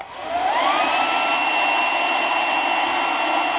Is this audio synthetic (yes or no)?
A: no